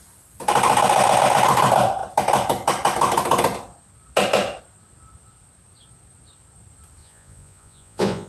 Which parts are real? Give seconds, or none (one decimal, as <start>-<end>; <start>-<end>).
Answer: 0.0-7.0